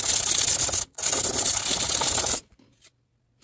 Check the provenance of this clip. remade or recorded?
recorded